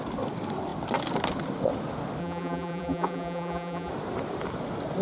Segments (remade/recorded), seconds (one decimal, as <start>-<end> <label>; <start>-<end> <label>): 0.0-2.2 recorded; 2.2-3.9 remade; 3.9-5.0 recorded